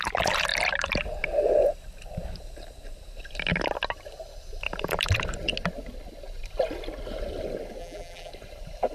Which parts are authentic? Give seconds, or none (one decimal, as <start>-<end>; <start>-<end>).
0.0-7.8; 8.3-8.9